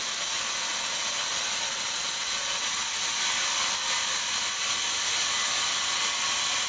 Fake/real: real